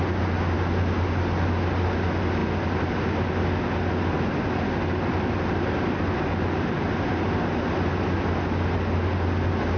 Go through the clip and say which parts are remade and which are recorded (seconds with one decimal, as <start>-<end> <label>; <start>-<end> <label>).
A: 0.0-9.8 recorded